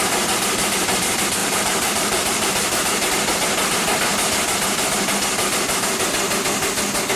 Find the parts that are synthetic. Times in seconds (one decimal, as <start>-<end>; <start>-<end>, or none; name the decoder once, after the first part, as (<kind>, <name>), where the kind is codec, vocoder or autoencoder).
1.4-3.1 (vocoder, BigVGAN v2)